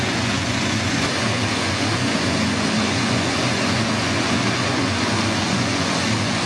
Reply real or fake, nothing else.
fake